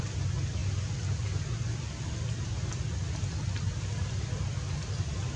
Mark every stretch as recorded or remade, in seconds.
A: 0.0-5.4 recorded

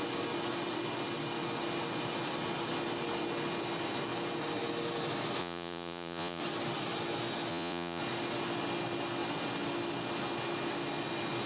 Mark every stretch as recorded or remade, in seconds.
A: 0.0-5.4 recorded; 5.4-6.4 remade; 6.4-7.5 recorded; 7.5-8.0 remade; 8.0-11.5 recorded

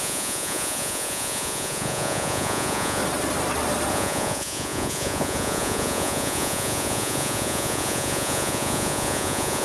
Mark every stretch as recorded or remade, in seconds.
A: 0.0-3.0 remade; 3.0-3.9 recorded; 3.9-9.6 remade